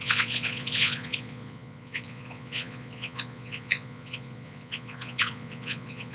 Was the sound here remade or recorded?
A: remade